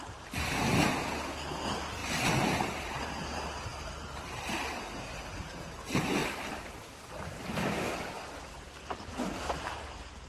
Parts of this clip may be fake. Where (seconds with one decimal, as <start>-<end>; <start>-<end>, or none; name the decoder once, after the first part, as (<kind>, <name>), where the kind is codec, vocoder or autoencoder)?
none